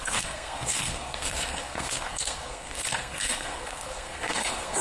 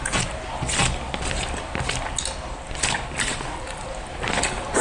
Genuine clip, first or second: second